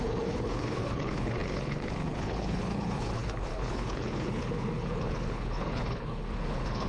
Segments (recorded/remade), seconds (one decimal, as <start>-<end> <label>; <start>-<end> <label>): 0.0-6.9 remade